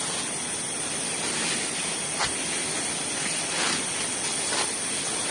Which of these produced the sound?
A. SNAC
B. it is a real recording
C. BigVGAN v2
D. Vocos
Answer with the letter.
B